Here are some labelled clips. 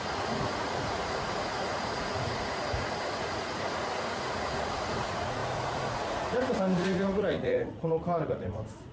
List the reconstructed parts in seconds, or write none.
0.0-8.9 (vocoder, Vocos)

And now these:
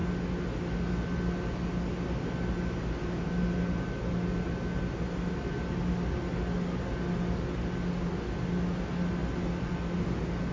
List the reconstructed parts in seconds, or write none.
none

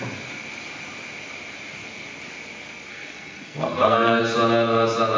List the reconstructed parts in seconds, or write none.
2.9-4.2 (codec, SNAC)

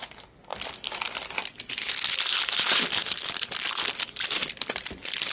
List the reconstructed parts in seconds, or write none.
3.0-5.3 (vocoder, BigVGAN v2)

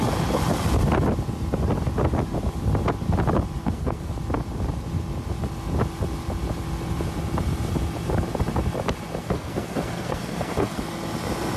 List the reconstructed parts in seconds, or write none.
3.6-4.1 (codec, SNAC); 9.2-10.8

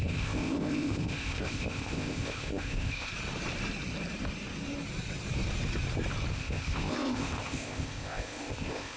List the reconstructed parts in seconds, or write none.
0.0-3.1 (codec, ZipCodec); 6.3-9.0